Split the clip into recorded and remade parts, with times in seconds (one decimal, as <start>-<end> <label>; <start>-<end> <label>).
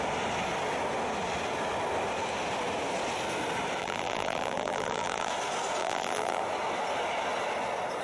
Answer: 0.0-3.8 recorded; 3.8-5.3 remade; 5.3-5.8 recorded; 5.8-6.4 remade; 6.4-8.0 recorded